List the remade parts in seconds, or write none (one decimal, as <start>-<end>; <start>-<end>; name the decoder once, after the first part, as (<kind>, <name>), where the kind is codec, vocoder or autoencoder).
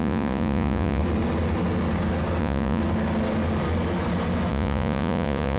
0.0-1.0 (vocoder, Vocos); 2.4-2.8; 4.5-5.6